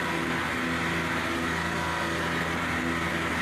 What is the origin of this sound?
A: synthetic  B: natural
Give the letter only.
B